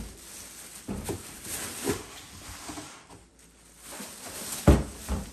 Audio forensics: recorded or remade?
recorded